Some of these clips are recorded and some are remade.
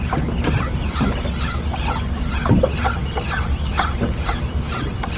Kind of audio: recorded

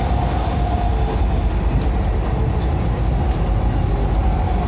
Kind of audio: recorded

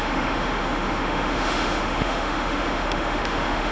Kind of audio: remade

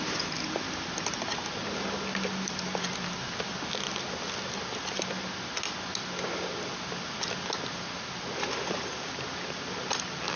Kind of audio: recorded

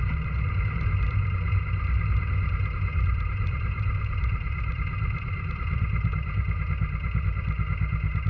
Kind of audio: remade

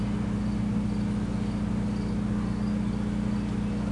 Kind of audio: recorded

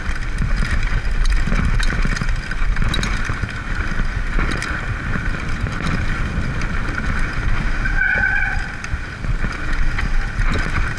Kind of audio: recorded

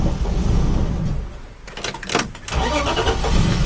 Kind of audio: recorded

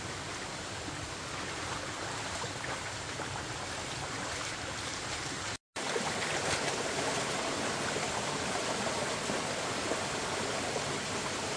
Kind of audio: recorded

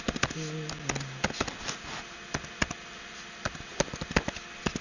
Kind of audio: recorded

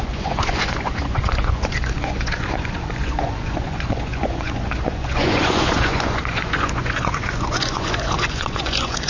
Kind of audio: remade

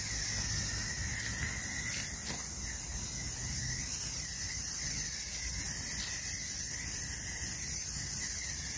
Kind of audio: recorded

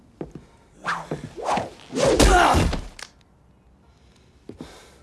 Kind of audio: recorded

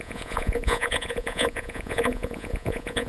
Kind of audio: remade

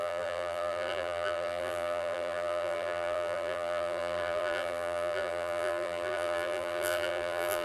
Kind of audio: remade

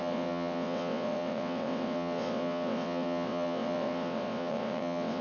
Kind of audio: remade